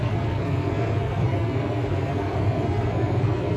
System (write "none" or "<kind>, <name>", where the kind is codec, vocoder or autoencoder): codec, SNAC